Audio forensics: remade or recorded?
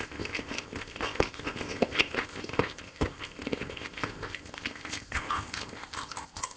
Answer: remade